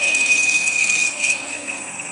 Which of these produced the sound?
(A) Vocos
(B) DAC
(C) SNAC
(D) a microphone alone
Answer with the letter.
C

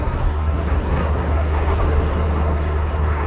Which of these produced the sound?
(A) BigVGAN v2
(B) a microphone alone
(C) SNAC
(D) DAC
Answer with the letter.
C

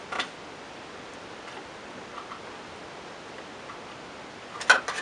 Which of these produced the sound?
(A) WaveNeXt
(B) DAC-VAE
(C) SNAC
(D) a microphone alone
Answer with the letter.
D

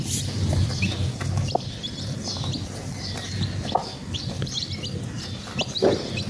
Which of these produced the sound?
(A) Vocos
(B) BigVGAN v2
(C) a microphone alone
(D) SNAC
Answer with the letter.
C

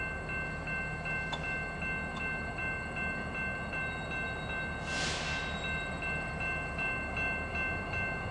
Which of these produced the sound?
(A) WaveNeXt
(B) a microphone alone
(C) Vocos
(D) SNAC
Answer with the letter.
B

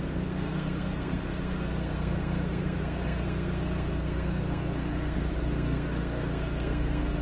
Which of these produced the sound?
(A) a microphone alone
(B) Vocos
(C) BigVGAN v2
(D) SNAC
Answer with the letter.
D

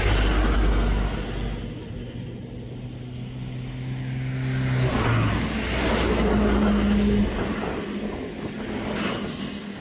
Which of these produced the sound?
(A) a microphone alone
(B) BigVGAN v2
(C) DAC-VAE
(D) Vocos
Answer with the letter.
A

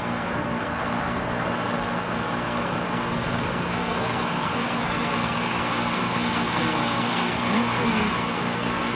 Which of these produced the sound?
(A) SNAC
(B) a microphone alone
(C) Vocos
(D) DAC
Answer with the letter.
A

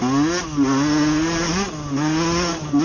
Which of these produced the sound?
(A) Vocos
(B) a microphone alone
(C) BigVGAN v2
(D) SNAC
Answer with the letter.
B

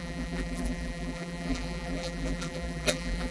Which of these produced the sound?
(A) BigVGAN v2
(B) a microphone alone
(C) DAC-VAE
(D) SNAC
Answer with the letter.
A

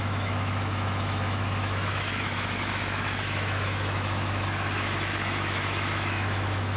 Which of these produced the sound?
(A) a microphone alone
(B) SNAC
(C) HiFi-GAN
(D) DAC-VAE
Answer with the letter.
D